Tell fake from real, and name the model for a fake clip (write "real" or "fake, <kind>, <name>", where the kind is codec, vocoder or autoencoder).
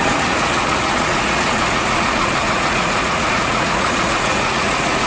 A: fake, vocoder, Vocos